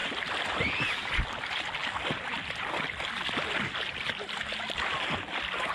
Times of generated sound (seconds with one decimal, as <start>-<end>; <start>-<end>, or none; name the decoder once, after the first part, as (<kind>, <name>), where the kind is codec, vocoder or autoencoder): 0.0-0.7 (vocoder, BigVGAN v2); 1.8-5.1